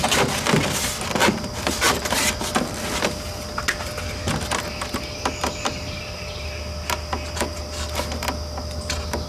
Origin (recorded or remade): recorded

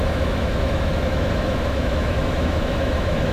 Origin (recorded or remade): remade